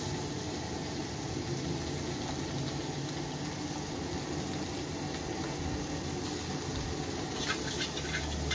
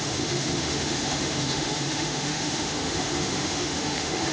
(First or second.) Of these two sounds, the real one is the first